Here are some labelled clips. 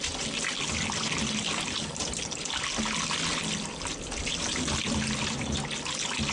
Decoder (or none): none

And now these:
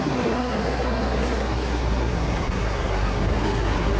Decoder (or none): codec, SNAC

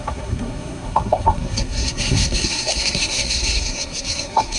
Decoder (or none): codec, SNAC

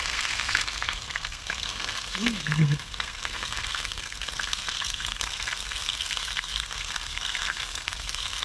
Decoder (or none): codec, SNAC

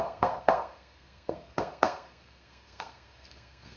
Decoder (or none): codec, SNAC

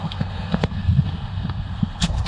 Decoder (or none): codec, SNAC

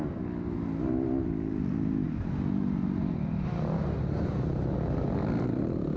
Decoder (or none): none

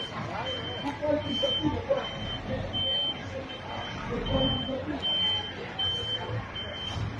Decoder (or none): none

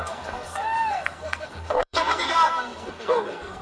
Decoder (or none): codec, SNAC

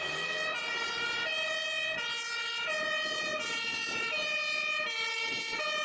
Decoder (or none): none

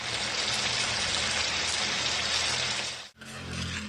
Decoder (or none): none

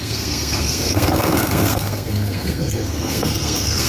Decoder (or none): codec, SNAC